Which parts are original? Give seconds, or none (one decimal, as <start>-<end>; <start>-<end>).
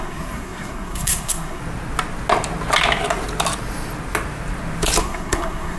1.6-5.0